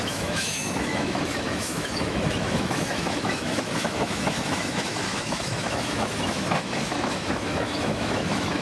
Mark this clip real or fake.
fake